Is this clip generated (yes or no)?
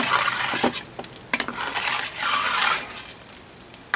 no